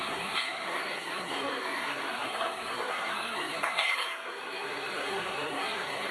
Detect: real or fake fake